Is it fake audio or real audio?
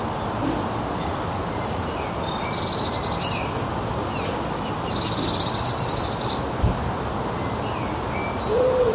real